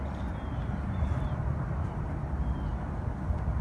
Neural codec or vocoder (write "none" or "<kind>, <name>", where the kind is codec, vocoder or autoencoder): none